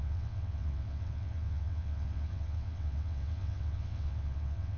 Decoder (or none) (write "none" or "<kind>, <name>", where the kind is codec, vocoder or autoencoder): vocoder, WaveNeXt